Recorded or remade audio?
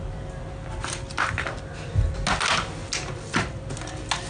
recorded